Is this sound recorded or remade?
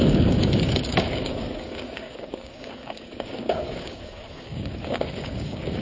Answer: remade